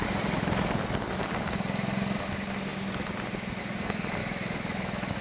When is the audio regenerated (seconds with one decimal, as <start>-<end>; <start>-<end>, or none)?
4.2-5.2